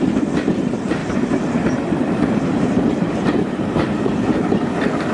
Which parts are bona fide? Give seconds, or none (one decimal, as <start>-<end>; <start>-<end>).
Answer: 0.0-1.0; 4.1-5.1